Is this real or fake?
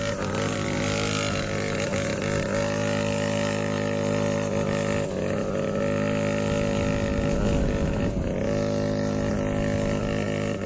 real